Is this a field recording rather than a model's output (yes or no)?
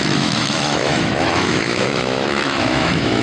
no